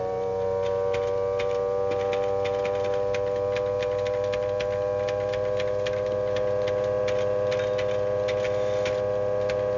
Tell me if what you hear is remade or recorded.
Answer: recorded